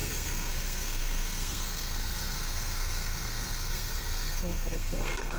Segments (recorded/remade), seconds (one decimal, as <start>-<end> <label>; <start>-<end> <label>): 0.0-5.4 remade